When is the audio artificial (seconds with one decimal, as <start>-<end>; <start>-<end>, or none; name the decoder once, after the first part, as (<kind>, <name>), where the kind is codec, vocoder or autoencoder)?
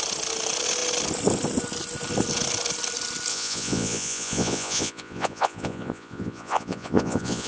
3.3-7.5 (vocoder, Vocos)